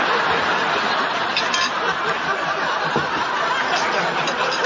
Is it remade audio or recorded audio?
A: recorded